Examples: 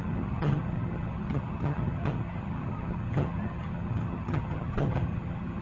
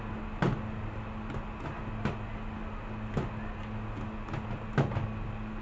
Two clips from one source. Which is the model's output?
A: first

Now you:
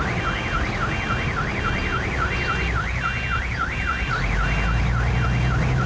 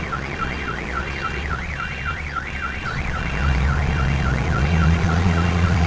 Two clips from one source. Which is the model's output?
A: second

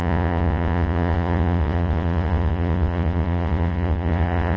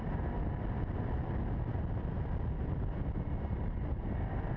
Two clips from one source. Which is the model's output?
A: first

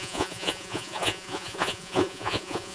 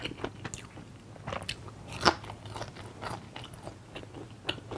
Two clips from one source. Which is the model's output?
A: first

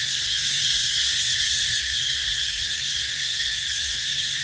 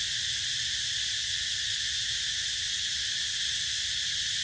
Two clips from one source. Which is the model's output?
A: first